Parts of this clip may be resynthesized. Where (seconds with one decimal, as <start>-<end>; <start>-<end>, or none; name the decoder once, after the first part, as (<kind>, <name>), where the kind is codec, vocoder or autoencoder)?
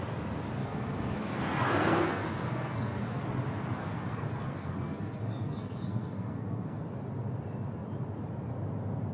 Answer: 0.6-3.2 (codec, SNAC); 3.8-6.8